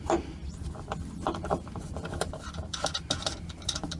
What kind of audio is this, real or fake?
fake